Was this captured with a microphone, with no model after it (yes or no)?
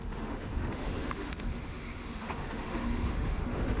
no